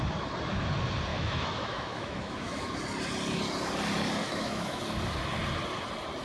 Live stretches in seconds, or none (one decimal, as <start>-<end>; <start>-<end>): 0.0-1.1; 2.7-4.2; 4.8-6.2